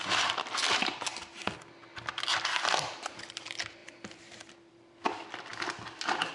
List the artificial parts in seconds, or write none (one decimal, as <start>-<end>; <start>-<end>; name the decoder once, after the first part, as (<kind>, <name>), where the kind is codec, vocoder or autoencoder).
0.0-1.1 (vocoder, BigVGAN v2); 3.1-5.5

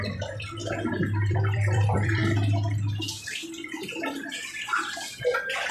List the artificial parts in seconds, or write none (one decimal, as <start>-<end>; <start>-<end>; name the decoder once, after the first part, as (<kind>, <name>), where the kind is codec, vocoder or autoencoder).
0.0-0.6 (vocoder, BigVGAN v2); 1.3-2.2; 5.2-5.7

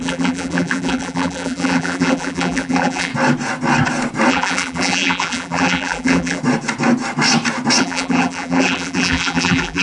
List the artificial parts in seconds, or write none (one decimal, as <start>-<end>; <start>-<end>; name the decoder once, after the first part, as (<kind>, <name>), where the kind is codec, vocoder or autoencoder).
0.0-3.1 (vocoder, BigVGAN v2); 4.3-6.4; 7.8-9.8